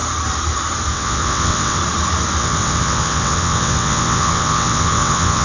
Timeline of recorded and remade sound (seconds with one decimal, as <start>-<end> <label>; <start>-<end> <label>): 0.0-0.9 recorded; 0.9-1.8 remade; 1.8-2.4 recorded; 2.4-5.4 remade